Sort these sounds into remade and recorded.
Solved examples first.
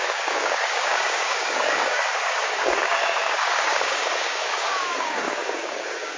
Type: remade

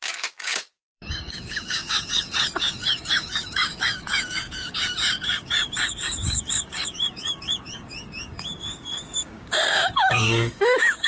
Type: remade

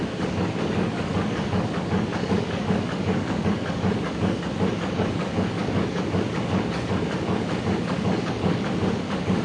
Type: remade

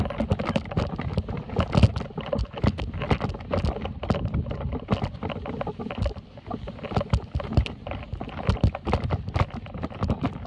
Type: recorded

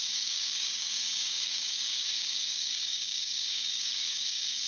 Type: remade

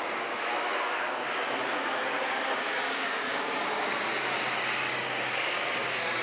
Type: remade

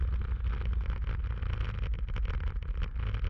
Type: recorded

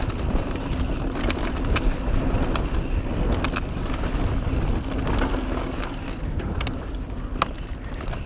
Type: recorded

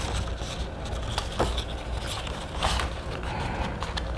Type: recorded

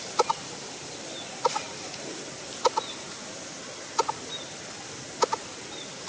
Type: recorded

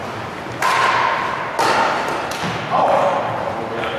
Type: recorded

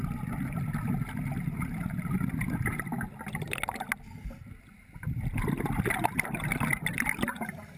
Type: recorded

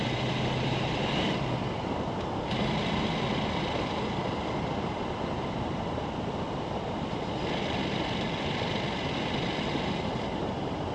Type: recorded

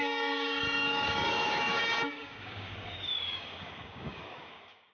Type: remade